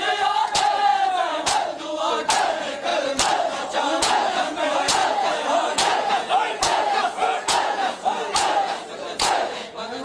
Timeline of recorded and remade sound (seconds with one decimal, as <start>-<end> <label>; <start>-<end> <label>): 0.0-2.9 remade; 2.9-4.0 recorded; 4.0-10.0 remade